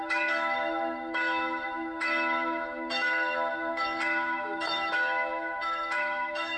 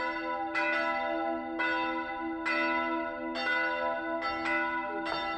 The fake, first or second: first